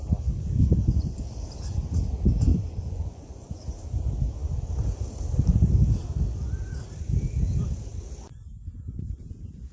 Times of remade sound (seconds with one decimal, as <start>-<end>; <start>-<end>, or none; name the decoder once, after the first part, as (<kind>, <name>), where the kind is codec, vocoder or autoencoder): 2.5-3.6 (vocoder, Vocos)